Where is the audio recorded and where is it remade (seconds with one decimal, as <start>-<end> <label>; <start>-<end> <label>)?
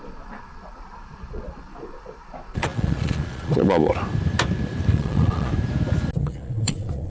0.0-3.9 remade; 3.9-4.9 recorded; 4.9-5.5 remade; 5.5-6.2 recorded; 6.2-7.1 remade